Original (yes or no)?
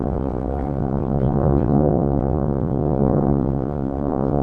no